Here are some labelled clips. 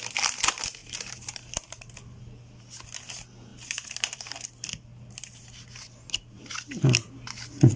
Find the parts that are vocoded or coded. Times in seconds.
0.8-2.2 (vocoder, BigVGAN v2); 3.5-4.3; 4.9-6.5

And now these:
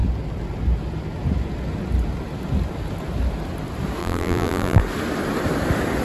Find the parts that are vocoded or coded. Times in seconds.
4.0-4.8 (vocoder, BigVGAN v2)

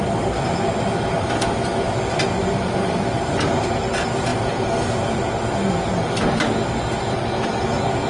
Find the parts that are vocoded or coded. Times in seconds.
2.4-3.9 (vocoder, BigVGAN v2)

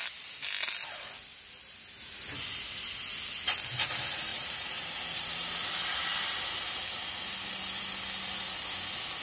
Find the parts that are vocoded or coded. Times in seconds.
4.3-5.5 (vocoder, BigVGAN v2)

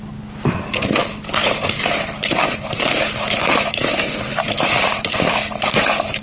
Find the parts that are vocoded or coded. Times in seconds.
1.4-5.1 (vocoder, BigVGAN v2)

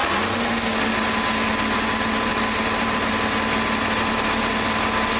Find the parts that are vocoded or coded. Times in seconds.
2.3-3.1 (vocoder, BigVGAN v2)

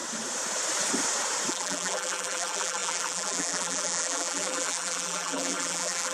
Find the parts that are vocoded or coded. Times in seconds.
1.5-6.1 (vocoder, BigVGAN v2)